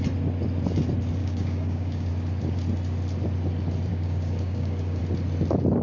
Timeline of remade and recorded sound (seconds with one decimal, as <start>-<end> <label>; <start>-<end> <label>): 0.0-1.2 recorded; 1.2-2.1 remade; 2.1-3.9 recorded; 3.9-5.0 remade; 5.0-5.8 recorded